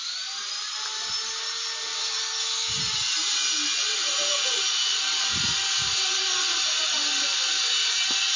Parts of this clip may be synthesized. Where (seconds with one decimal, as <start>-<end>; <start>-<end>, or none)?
none